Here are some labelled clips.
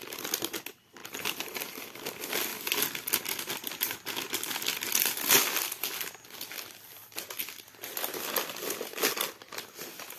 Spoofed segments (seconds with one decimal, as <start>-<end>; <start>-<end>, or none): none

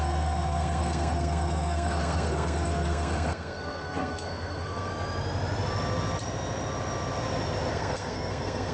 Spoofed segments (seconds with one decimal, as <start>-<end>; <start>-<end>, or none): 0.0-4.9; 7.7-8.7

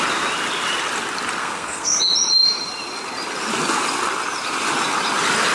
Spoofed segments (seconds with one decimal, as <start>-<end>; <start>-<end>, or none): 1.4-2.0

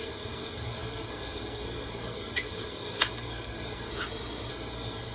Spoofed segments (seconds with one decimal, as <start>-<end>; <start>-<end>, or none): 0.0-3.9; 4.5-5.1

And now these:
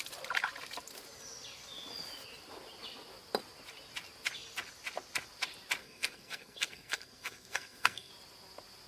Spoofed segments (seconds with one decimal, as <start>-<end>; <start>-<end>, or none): 5.8-8.1

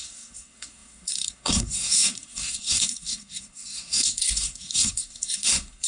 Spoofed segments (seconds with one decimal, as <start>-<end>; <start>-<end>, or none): 0.0-5.9